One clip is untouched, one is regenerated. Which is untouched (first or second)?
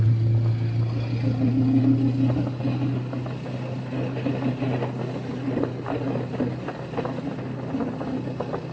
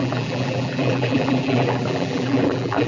first